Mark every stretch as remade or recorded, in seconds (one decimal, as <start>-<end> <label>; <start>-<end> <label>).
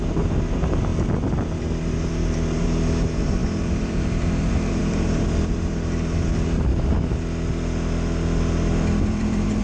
0.0-0.9 remade; 0.9-1.9 recorded; 1.9-6.7 remade; 6.7-9.0 recorded; 9.0-9.6 remade